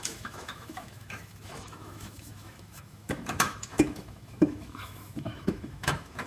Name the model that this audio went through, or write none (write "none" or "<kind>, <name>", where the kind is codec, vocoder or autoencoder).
autoencoder, DAC-VAE